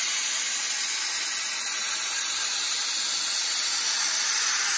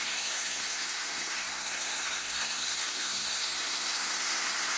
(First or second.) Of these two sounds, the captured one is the first